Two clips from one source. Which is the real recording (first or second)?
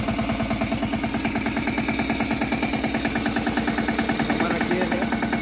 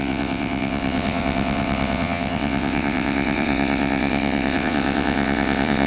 first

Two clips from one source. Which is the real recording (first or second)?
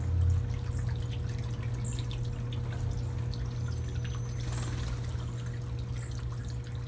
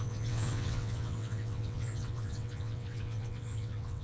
first